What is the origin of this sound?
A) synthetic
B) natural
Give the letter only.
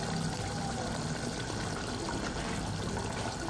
B